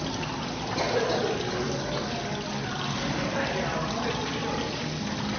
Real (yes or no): yes